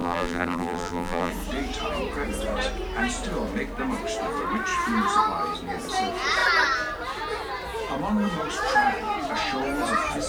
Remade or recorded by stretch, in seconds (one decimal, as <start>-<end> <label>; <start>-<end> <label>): 0.0-1.3 remade; 1.3-10.3 recorded